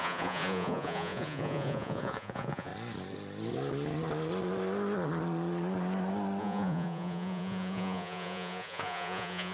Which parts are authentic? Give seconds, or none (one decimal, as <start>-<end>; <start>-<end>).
2.7-6.4